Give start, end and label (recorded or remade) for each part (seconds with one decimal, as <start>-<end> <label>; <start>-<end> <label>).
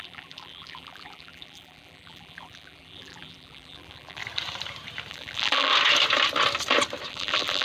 0.0-4.2 remade; 4.2-5.1 recorded; 5.1-5.7 remade; 5.7-7.1 recorded; 7.1-7.6 remade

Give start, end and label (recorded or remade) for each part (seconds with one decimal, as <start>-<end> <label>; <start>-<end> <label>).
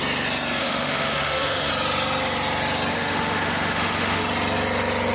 0.0-0.6 recorded; 0.6-1.7 remade; 1.7-2.9 recorded; 2.9-4.2 remade; 4.2-5.1 recorded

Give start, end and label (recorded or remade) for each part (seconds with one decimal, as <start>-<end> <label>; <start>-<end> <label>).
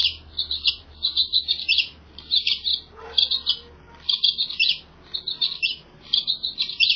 0.0-2.7 remade; 2.7-5.7 recorded; 5.7-7.0 remade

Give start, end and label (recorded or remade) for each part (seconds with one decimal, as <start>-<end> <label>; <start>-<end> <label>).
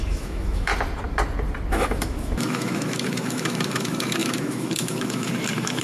0.0-0.7 remade; 0.7-1.7 recorded; 1.7-5.8 remade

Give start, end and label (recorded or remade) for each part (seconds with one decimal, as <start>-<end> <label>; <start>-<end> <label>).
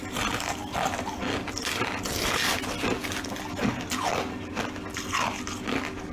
0.0-6.1 recorded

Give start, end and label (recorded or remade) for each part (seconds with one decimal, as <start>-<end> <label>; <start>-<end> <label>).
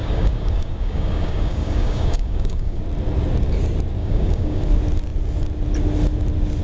0.0-2.8 remade; 2.8-4.0 recorded; 4.0-4.6 remade; 4.6-6.6 recorded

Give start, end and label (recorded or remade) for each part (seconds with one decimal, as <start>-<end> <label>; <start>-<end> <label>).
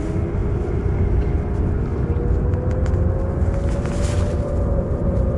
0.0-5.4 recorded